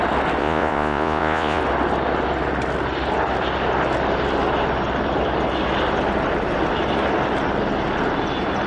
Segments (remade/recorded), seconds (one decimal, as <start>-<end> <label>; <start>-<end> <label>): 0.0-0.4 recorded; 0.4-1.6 remade; 1.6-8.7 recorded